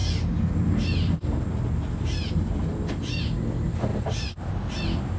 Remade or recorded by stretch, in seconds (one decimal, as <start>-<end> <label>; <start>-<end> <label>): 0.0-3.9 recorded; 3.9-4.5 remade; 4.5-5.2 recorded